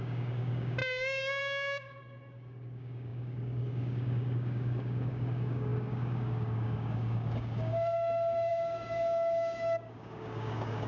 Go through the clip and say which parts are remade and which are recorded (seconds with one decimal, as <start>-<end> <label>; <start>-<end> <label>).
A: 0.0-10.9 remade